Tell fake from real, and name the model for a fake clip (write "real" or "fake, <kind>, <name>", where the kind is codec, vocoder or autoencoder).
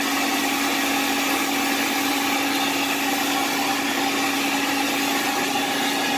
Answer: real